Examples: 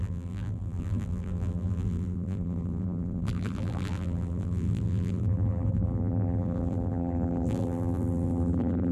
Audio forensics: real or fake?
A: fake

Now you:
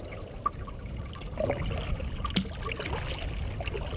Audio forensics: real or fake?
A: real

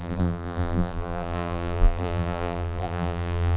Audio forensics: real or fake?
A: fake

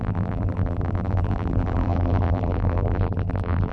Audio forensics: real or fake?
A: fake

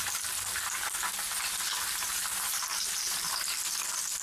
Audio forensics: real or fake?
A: real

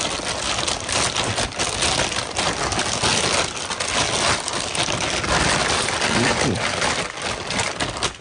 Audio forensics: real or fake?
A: real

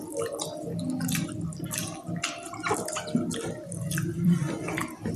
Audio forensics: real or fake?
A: fake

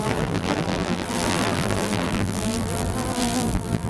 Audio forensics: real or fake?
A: fake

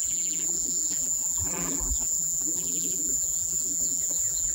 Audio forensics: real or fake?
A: fake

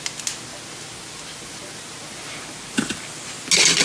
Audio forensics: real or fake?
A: real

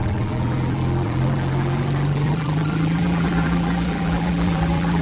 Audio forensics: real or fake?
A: fake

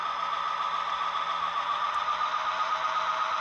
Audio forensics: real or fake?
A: real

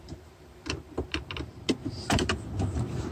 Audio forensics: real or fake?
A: fake